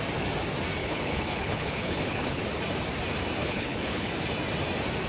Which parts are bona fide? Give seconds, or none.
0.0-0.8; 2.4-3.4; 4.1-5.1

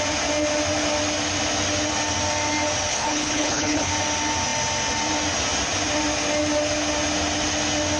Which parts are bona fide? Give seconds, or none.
0.0-2.9; 3.9-8.0